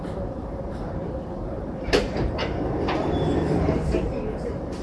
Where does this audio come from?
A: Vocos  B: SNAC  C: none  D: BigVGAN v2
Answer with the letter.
D